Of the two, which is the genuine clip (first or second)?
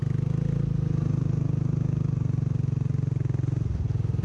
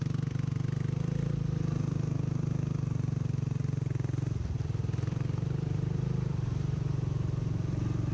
first